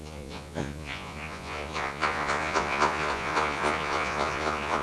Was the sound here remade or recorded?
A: remade